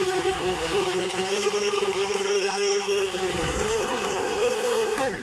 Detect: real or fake fake